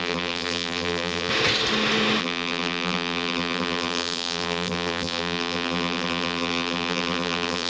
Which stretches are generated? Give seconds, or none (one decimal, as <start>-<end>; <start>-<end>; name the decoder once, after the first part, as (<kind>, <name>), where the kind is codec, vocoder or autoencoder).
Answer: 0.0-1.3 (vocoder, BigVGAN v2); 2.2-7.7